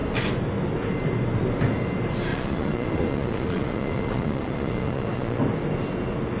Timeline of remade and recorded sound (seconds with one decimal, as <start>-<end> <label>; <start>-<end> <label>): 0.0-2.3 recorded; 2.3-5.4 remade; 5.4-6.4 recorded